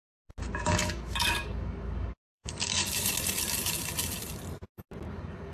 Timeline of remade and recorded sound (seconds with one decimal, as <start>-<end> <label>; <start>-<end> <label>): 0.0-0.6 recorded; 0.6-2.8 remade; 2.8-5.1 recorded; 5.1-5.5 remade